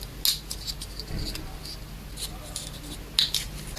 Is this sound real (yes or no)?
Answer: yes